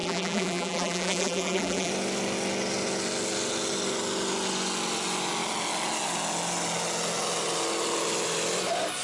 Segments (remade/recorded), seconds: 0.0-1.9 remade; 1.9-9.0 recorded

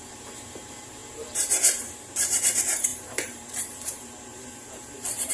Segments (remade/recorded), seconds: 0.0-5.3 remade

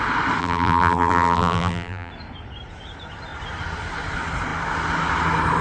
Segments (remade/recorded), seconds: 0.0-0.4 recorded; 0.4-2.1 remade; 2.1-5.6 recorded